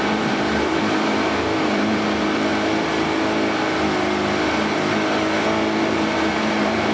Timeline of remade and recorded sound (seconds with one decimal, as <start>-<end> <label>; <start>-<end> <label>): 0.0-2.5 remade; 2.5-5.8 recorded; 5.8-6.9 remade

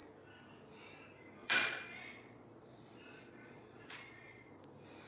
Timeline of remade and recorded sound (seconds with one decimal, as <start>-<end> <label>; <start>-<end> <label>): 0.0-1.4 recorded; 1.4-4.5 remade; 4.5-5.1 recorded

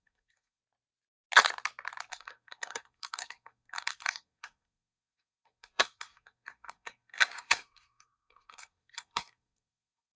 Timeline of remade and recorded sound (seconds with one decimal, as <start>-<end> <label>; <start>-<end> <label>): 0.0-0.6 remade; 0.6-2.1 recorded; 2.1-10.2 remade